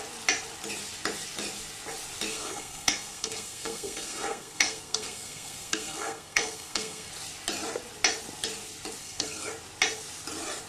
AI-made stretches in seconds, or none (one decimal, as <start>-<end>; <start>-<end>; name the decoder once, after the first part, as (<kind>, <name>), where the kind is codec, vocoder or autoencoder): 2.3-7.1 (codec, SNAC); 9.0-9.5